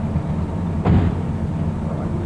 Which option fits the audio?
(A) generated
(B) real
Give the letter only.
B